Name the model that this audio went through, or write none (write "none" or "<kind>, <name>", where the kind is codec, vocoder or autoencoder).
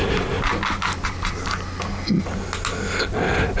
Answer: none